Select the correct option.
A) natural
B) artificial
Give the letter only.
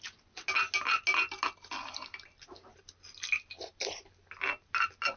A